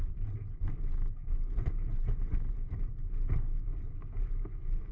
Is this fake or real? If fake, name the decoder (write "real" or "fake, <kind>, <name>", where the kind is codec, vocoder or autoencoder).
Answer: fake, vocoder, BigVGAN v2